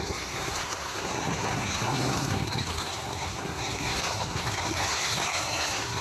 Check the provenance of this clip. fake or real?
fake